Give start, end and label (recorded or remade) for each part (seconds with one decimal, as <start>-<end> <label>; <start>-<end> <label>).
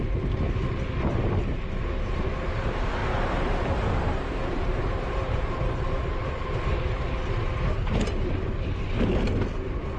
0.0-3.0 recorded; 3.0-3.7 remade; 3.7-4.7 recorded; 4.7-6.0 remade; 6.0-10.0 recorded